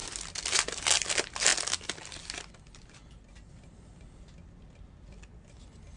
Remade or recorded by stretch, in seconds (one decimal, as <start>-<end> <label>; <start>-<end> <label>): 0.0-6.0 recorded